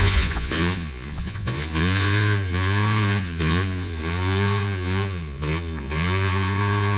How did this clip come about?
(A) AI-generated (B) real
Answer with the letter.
A